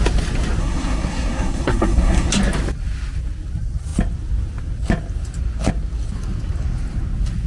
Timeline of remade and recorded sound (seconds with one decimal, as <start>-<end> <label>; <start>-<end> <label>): 0.0-0.6 recorded; 0.6-2.3 remade; 2.3-7.5 recorded